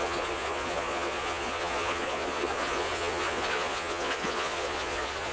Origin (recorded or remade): remade